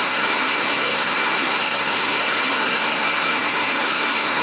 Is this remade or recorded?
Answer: remade